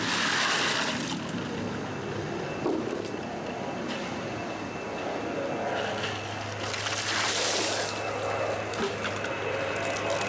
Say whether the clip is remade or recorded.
recorded